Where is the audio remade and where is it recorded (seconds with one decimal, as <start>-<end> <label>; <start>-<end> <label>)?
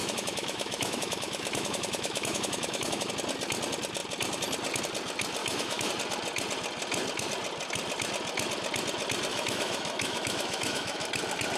0.0-3.1 remade; 3.1-5.4 recorded; 5.4-5.9 remade; 5.9-9.3 recorded; 9.3-11.1 remade; 11.1-11.6 recorded